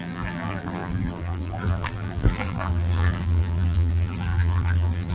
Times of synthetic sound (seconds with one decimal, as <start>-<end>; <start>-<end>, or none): 0.0-5.1